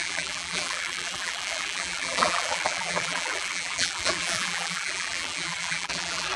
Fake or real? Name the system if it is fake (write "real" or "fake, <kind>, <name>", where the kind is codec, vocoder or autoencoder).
fake, vocoder, BigVGAN v2